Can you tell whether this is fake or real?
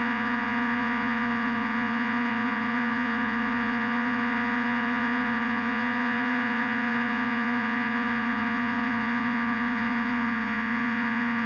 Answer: fake